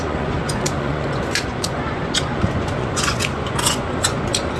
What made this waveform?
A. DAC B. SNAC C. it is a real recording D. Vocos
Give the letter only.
D